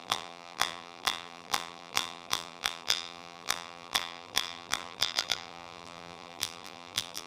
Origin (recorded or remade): remade